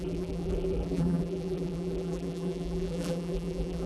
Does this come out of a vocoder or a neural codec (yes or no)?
yes